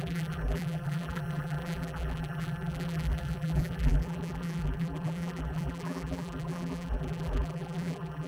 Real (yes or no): no